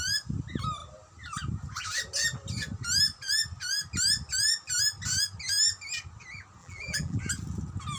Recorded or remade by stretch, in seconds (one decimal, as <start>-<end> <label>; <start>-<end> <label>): 0.0-6.6 recorded; 6.6-7.2 remade; 7.2-8.0 recorded